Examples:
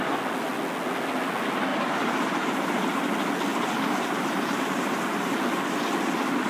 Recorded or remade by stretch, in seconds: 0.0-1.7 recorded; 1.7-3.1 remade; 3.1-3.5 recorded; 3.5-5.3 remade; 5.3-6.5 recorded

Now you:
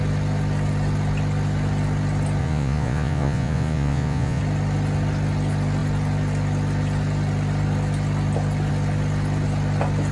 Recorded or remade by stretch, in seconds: 0.0-2.4 recorded; 2.4-4.4 remade; 4.4-10.1 recorded

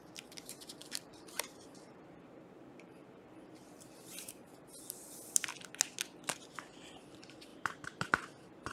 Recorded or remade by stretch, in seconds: 0.0-5.5 remade; 5.5-6.2 recorded; 6.2-8.7 remade

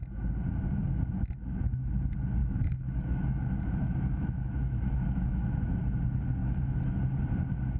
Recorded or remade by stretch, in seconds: 0.0-2.4 recorded; 2.4-5.8 remade; 5.8-6.4 recorded; 6.4-6.9 remade; 6.9-7.8 recorded

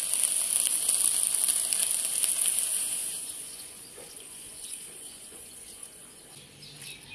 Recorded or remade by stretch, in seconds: 0.0-3.0 recorded; 3.0-6.2 remade; 6.2-7.1 recorded

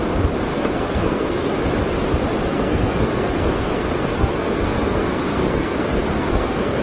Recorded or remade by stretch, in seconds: 0.0-0.5 recorded; 0.5-1.5 remade; 1.5-2.5 recorded; 2.5-6.8 remade

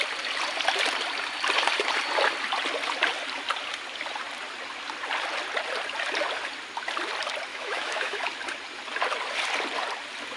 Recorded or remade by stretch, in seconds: 0.0-7.5 recorded; 7.5-8.3 remade; 8.3-10.4 recorded